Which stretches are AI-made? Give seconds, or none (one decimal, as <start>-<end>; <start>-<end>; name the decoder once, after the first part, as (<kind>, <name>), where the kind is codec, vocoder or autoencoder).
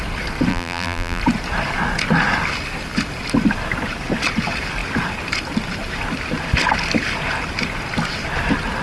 0.5-1.2 (vocoder, BigVGAN v2)